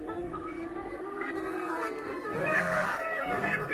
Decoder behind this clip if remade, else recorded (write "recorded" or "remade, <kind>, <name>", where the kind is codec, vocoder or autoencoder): remade, codec, SNAC